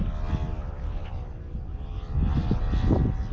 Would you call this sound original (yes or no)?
yes